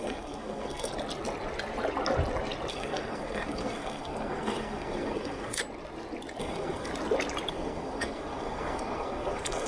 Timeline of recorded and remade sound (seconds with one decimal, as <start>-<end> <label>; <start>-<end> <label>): 0.0-0.9 remade; 0.9-2.7 recorded; 2.7-5.6 remade; 5.6-6.4 recorded; 6.4-6.9 remade; 6.9-7.5 recorded; 7.5-9.7 remade